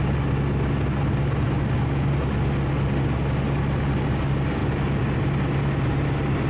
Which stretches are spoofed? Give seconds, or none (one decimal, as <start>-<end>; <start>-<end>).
none